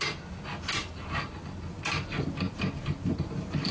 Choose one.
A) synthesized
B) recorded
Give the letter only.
B